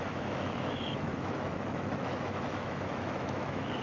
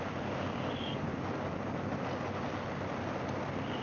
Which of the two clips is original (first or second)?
second